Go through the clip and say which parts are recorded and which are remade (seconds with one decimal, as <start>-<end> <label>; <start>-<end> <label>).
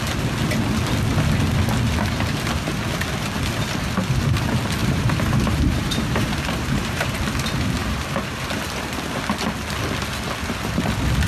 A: 0.0-4.8 recorded; 4.8-7.2 remade; 7.2-11.3 recorded